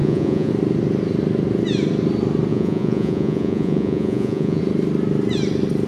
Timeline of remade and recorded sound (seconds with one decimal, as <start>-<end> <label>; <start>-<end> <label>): 0.0-0.5 remade; 0.5-2.5 recorded; 2.5-4.6 remade; 4.6-5.9 recorded